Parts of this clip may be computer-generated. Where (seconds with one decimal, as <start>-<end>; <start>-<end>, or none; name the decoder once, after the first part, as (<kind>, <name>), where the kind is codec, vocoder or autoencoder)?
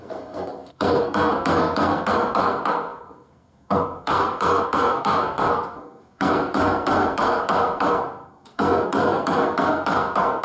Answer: 0.0-10.4 (codec, SNAC)